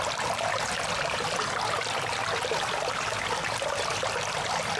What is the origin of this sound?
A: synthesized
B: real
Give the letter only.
B